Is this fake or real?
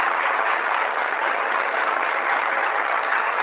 fake